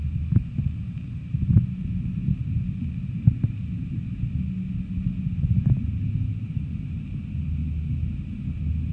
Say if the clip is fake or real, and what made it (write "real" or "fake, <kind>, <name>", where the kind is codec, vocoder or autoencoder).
real